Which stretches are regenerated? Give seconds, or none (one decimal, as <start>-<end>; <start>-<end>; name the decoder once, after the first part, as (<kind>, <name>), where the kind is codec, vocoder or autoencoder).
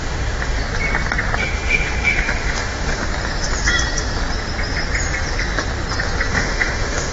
0.0-0.6 (autoencoder, DAC-VAE); 1.4-3.0; 6.3-7.1